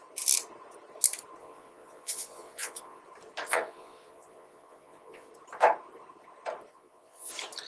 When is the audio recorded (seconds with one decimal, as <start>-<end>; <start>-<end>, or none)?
0.0-1.4; 3.0-3.5; 5.3-6.7; 7.3-7.7